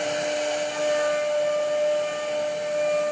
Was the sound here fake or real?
real